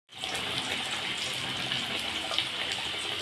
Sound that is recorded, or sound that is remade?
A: recorded